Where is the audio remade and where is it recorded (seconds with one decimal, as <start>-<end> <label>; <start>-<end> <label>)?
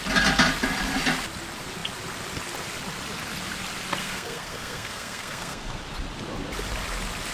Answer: 0.0-4.0 recorded; 4.0-5.8 remade; 5.8-7.3 recorded